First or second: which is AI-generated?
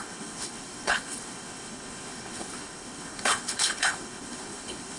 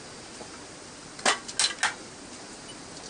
first